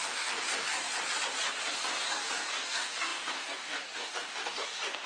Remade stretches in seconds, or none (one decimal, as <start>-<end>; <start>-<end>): 0.0-0.9; 2.0-5.1